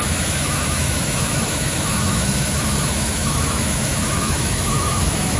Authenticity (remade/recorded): remade